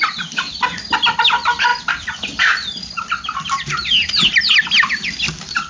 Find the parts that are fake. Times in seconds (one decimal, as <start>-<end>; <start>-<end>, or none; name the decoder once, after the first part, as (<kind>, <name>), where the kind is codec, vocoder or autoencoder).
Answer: none